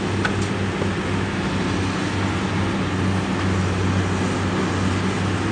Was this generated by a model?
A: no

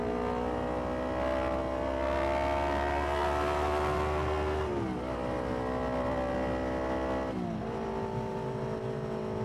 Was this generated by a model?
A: no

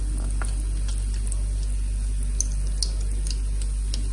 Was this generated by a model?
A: no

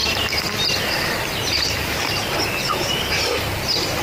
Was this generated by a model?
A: no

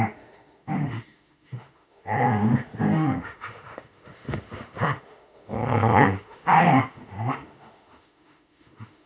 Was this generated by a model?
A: yes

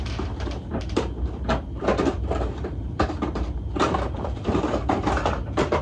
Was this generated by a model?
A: yes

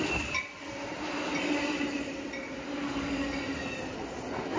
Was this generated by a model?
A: no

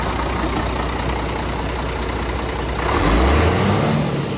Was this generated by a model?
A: no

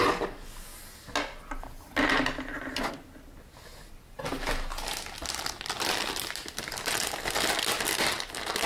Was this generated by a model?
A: no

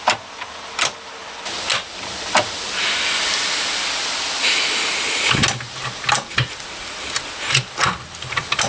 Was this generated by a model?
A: no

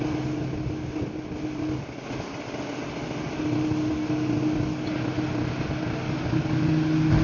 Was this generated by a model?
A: no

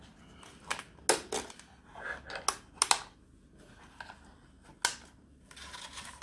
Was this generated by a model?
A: no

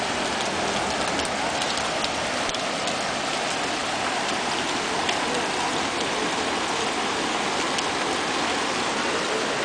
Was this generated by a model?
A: no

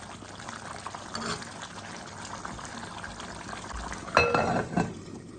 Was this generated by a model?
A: no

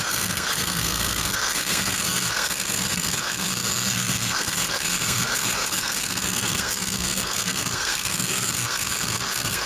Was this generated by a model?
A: yes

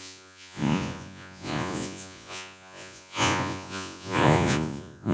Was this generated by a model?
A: yes